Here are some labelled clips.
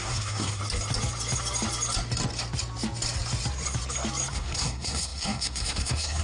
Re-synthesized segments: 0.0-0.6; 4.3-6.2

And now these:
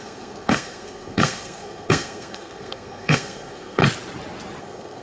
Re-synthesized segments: 0.0-3.8; 4.6-5.0

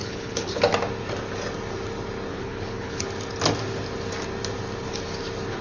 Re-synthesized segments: 0.0-0.6; 2.3-3.0